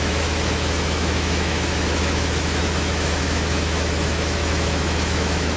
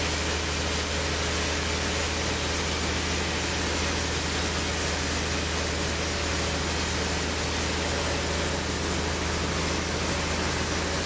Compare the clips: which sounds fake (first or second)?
first